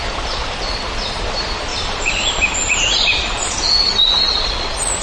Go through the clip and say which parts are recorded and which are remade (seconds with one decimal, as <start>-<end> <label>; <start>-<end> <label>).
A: 0.0-1.7 recorded; 1.7-3.6 remade; 3.6-5.0 recorded